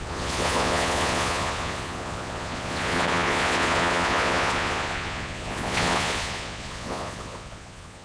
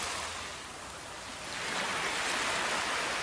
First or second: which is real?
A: second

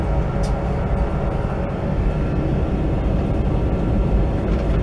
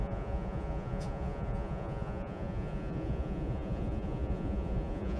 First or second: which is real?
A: first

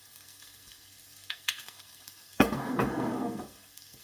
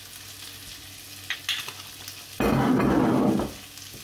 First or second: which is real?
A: second